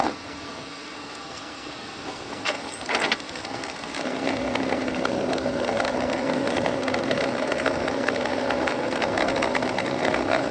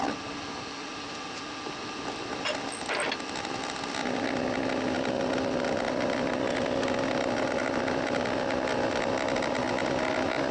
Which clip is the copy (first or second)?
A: first